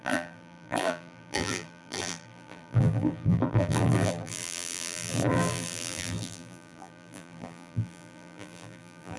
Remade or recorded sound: remade